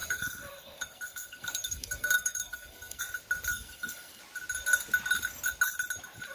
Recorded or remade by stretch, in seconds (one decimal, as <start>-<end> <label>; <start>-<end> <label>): 0.0-3.0 remade; 3.0-3.5 recorded; 3.5-4.2 remade; 4.2-6.3 recorded